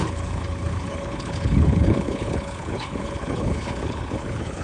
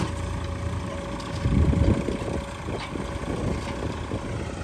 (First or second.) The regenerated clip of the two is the first